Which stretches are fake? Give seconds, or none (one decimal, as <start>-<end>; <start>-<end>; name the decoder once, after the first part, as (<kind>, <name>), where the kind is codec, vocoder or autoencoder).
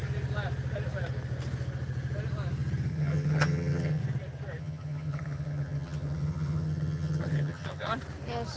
2.9-4.0 (vocoder, HiFi-GAN); 4.6-7.9